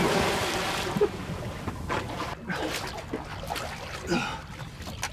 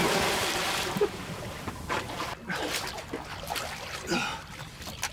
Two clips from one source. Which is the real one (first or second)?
first